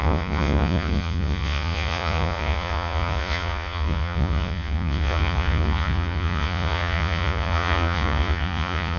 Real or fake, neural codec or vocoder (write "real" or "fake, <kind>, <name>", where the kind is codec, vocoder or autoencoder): fake, vocoder, Vocos